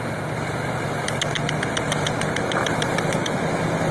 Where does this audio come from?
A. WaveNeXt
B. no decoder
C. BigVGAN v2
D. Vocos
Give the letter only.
B